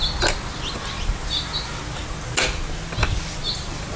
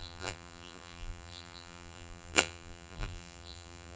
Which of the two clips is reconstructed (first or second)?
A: second